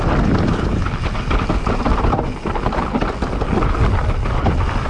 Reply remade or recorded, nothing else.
recorded